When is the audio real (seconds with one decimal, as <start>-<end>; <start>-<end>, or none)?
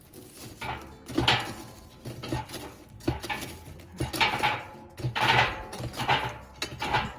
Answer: 0.0-7.2